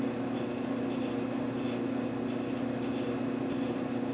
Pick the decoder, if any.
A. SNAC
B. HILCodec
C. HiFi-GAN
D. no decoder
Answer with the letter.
D